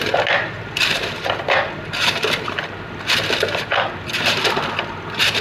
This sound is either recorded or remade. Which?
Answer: remade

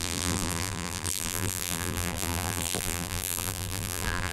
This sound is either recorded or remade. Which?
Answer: remade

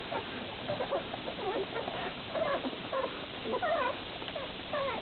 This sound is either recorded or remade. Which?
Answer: remade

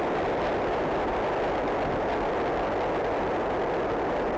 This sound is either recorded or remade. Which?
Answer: recorded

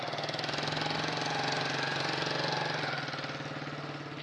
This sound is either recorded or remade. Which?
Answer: recorded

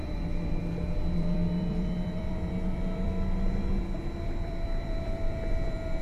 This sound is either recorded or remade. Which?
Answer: remade